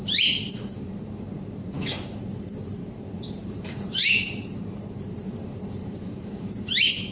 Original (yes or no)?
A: no